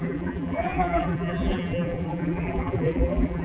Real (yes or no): no